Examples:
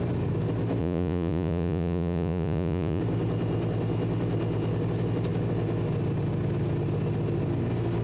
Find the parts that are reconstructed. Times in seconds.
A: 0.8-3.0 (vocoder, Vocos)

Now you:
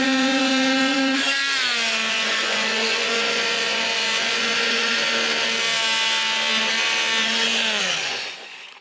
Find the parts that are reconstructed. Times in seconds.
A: 0.0-1.4 (vocoder, Vocos); 2.1-5.0; 7.8-8.8

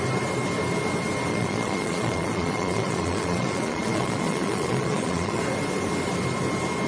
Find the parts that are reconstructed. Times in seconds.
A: 1.3-5.4 (vocoder, Vocos)

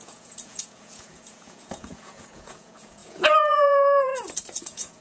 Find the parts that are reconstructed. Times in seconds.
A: 0.0-4.1 (vocoder, Vocos); 4.6-5.0

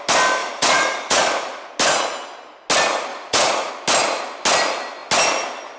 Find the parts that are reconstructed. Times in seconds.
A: 0.4-1.7 (vocoder, Vocos); 3.1-3.7

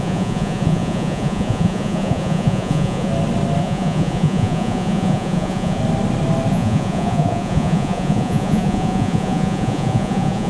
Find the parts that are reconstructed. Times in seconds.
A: 0.0-3.1 (vocoder, Vocos); 3.6-5.8; 6.5-10.5

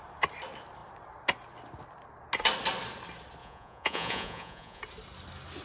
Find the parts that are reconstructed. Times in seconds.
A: 3.4-4.8 (vocoder, Vocos)

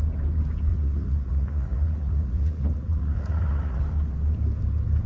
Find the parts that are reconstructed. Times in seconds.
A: 0.7-3.8 (vocoder, Vocos)